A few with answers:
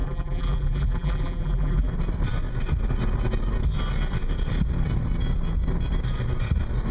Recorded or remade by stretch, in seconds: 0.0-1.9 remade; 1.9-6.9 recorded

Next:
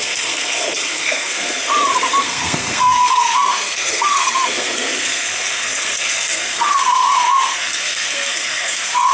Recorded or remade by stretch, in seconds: 0.0-1.7 remade; 1.7-2.2 recorded; 2.2-9.1 remade

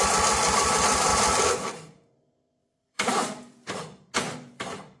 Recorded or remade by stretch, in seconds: 0.0-1.1 recorded; 1.1-1.7 remade; 1.7-2.6 recorded; 2.6-3.8 remade; 3.8-5.0 recorded

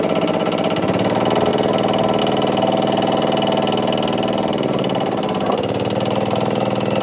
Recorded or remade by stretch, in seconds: 0.0-7.0 recorded

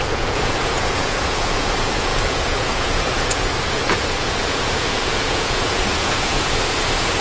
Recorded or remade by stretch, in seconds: 0.0-7.2 remade

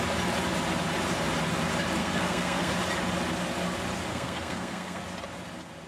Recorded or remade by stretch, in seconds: 0.0-2.0 recorded; 2.0-2.7 remade; 2.7-4.1 recorded; 4.1-5.0 remade; 5.0-5.9 recorded